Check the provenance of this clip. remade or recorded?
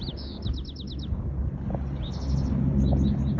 recorded